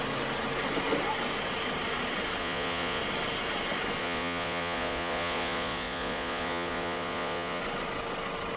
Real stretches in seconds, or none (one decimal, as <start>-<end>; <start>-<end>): 0.0-2.4; 3.0-4.0; 7.6-8.6